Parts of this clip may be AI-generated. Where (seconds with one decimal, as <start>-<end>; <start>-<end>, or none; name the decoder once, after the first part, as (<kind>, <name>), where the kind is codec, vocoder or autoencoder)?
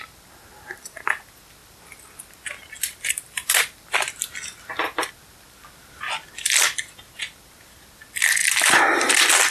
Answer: 0.0-9.5 (vocoder, BigVGAN v2)